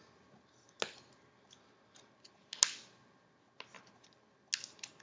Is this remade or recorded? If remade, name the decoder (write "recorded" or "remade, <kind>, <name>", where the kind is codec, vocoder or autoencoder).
recorded